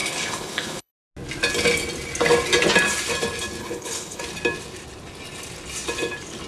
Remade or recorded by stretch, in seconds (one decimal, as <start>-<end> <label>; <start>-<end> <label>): 0.0-0.9 remade; 0.9-3.6 recorded; 3.6-4.2 remade; 4.2-6.5 recorded